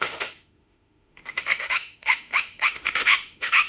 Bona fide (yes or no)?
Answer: no